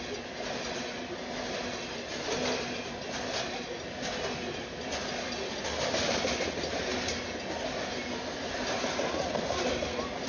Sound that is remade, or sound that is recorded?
recorded